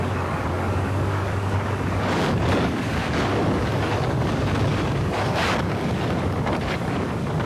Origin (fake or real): fake